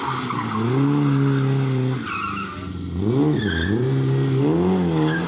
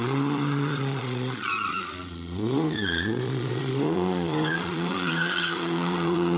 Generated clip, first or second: second